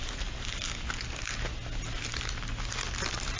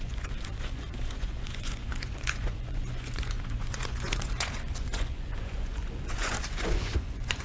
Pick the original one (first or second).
first